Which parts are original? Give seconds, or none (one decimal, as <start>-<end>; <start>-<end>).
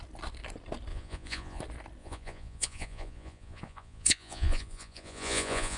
0.0-0.9; 1.6-2.0